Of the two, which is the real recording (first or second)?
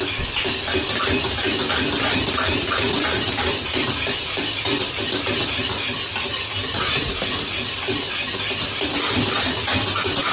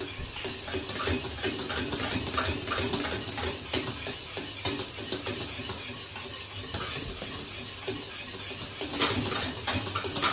second